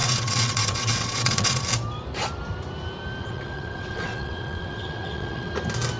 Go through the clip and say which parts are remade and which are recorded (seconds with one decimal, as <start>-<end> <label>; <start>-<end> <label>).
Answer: 0.0-1.6 remade; 1.6-3.2 recorded; 3.2-5.5 remade; 5.5-6.0 recorded